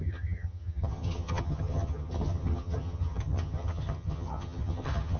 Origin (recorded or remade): remade